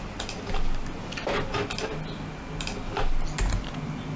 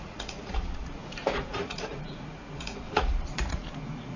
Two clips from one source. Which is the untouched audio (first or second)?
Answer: first